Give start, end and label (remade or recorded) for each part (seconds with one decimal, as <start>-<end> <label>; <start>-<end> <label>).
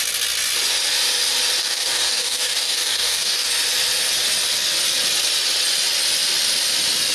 0.0-1.6 recorded; 1.6-3.5 remade; 3.5-7.1 recorded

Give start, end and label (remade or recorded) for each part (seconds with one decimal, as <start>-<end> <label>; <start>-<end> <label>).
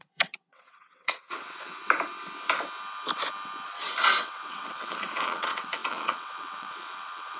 0.0-1.8 remade; 1.8-4.2 recorded; 4.2-7.4 remade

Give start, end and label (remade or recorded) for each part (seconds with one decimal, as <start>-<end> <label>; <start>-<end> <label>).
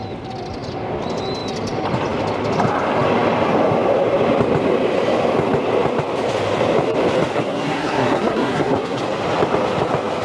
0.0-7.3 recorded; 7.3-9.0 remade; 9.0-10.2 recorded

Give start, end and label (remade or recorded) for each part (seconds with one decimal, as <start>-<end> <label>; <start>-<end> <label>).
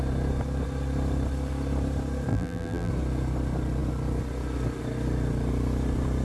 0.0-2.3 recorded; 2.3-2.9 remade; 2.9-6.2 recorded